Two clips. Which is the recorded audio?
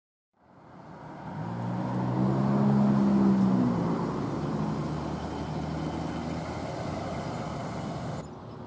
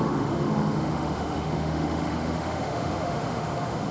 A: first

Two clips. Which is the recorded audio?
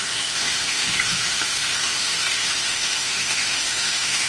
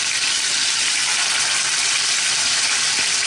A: second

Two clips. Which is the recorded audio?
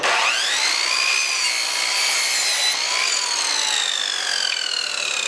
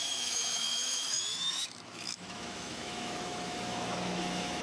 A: first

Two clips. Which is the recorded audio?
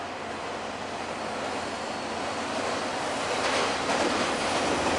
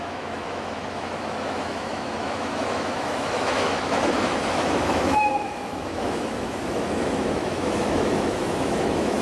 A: first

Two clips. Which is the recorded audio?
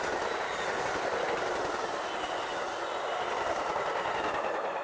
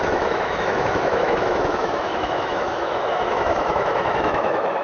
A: first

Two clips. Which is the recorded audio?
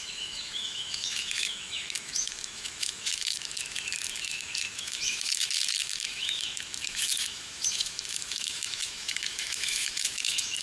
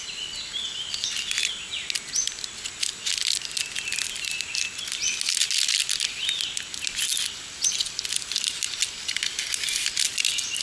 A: second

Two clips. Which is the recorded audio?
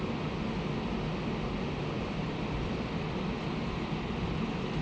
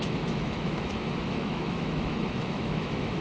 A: first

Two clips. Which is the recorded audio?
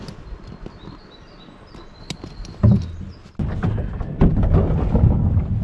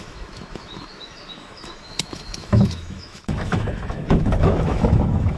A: first